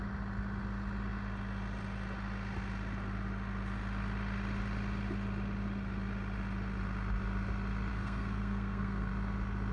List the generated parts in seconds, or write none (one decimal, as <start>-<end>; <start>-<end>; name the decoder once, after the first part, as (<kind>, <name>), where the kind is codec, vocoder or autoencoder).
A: 7.9-9.1 (codec, SNAC)

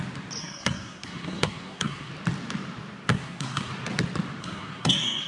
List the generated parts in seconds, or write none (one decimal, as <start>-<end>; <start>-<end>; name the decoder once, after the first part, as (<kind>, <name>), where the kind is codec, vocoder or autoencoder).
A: 0.4-2.1 (codec, SNAC); 3.1-3.7; 4.4-5.3

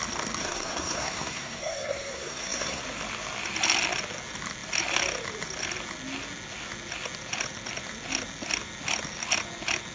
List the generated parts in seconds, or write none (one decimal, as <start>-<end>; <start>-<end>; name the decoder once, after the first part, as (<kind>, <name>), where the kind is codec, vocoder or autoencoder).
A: 0.4-2.8 (codec, SNAC)